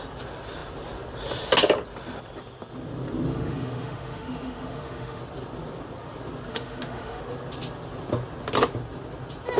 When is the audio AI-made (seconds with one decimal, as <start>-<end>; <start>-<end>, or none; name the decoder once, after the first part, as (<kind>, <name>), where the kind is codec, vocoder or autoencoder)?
3.3-5.2 (autoencoder, DAC-VAE); 6.5-7.2